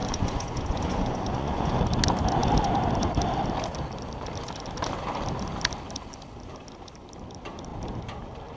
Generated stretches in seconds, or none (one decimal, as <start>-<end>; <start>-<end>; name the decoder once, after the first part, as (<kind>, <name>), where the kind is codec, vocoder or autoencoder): 0.0-1.8 (vocoder, Vocos)